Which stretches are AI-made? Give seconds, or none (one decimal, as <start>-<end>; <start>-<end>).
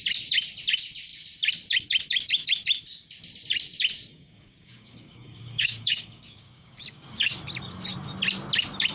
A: 4.1-7.3